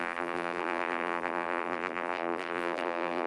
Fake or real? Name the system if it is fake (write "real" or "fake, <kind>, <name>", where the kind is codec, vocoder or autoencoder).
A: fake, vocoder, BigVGAN v2